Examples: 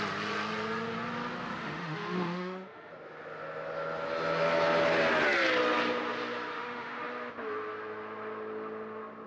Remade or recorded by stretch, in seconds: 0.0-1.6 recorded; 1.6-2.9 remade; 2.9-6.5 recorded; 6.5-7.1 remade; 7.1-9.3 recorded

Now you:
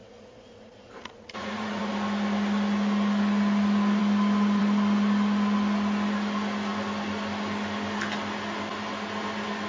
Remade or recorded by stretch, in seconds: 0.0-1.9 remade; 1.9-9.7 recorded

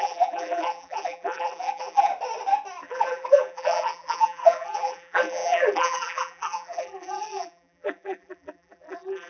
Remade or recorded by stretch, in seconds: 0.0-2.1 remade; 2.1-2.8 recorded; 2.8-9.3 remade

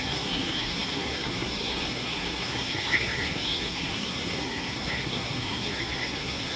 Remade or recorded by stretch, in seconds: 0.0-6.6 remade